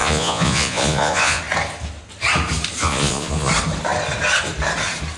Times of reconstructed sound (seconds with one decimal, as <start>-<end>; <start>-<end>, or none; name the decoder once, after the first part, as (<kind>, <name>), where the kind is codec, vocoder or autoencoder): 0.0-1.4 (vocoder, Vocos); 2.8-3.5